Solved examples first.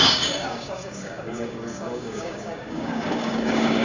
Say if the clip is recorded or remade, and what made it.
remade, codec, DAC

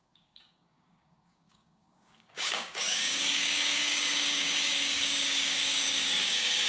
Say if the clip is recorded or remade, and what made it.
remade, codec, DAC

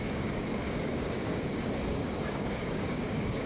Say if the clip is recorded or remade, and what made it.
remade, codec, DAC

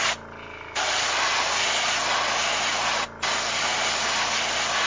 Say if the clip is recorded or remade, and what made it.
recorded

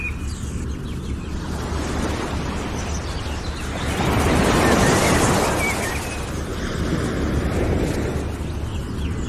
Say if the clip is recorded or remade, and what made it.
recorded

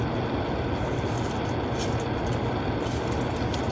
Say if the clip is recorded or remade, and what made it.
recorded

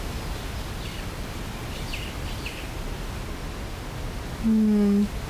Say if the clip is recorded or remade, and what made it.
recorded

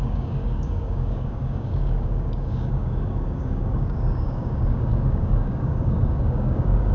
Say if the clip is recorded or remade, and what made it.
remade, codec, DAC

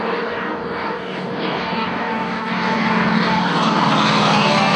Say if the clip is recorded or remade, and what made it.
remade, codec, DAC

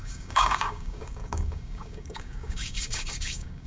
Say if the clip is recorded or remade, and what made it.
remade, codec, DAC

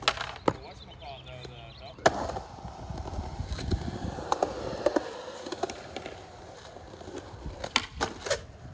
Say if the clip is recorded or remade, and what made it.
recorded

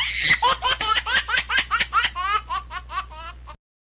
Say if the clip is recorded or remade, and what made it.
recorded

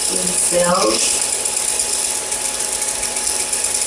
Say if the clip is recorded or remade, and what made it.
recorded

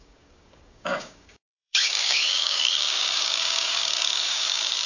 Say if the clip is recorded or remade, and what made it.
remade, codec, DAC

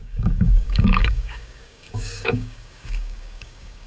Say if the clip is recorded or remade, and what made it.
remade, codec, DAC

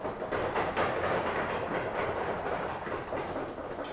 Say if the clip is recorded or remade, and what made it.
recorded